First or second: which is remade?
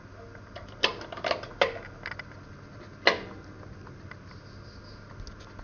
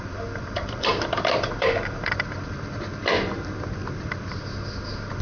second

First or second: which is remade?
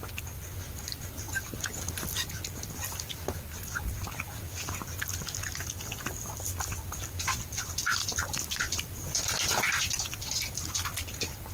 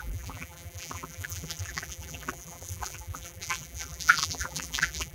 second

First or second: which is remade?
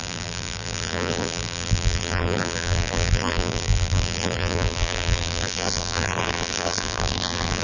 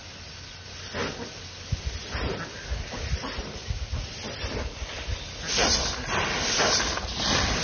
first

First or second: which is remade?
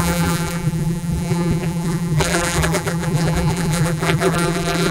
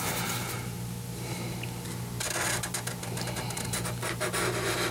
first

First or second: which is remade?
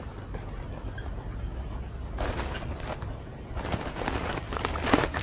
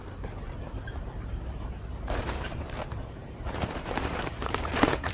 second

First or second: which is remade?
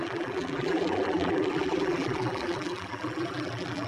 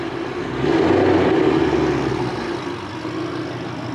first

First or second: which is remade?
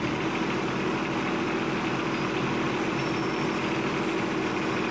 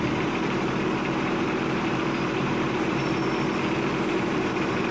second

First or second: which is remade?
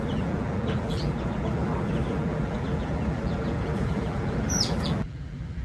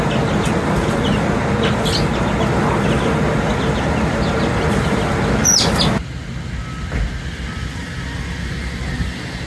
first